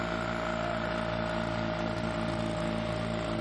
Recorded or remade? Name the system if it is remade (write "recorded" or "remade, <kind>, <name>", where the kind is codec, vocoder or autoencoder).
recorded